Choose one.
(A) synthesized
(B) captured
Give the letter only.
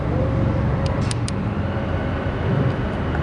A